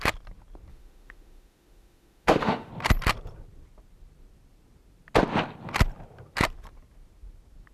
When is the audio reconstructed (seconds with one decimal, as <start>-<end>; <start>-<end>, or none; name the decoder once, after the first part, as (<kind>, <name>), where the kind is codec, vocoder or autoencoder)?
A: 0.7-2.7 (autoencoder, DAC-VAE)